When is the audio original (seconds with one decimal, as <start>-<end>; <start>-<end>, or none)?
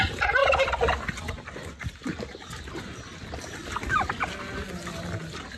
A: 0.0-5.6